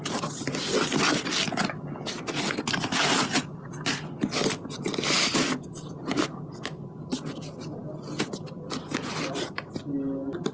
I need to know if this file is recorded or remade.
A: recorded